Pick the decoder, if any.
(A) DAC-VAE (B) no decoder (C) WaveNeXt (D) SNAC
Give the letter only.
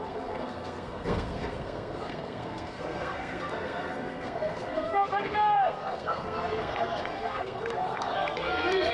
D